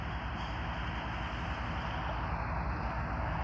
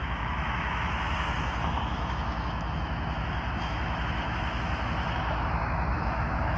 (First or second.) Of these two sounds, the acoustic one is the first